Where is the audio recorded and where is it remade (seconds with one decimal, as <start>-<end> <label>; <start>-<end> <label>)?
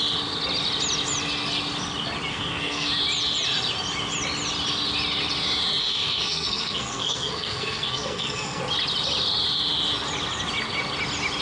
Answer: 0.0-2.3 recorded; 2.3-2.9 remade; 2.9-5.8 recorded; 5.8-8.6 remade; 8.6-11.4 recorded